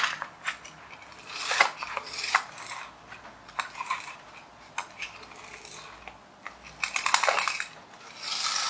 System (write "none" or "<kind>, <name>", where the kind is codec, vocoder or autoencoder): none